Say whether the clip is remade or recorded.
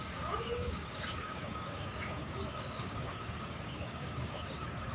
remade